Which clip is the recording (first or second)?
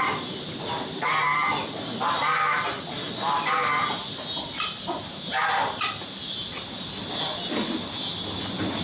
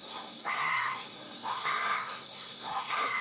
first